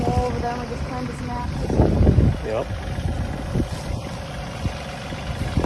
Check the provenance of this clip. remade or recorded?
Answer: recorded